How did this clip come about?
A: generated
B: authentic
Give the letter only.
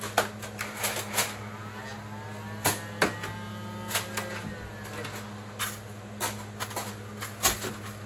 B